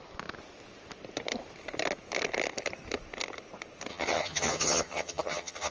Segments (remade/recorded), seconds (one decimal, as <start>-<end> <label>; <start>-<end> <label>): 0.0-3.9 recorded; 3.9-5.7 remade